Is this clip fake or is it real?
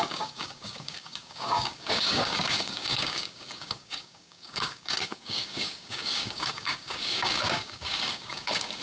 fake